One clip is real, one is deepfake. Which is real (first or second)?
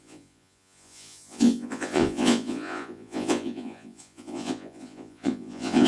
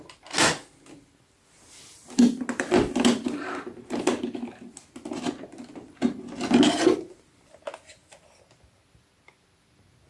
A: second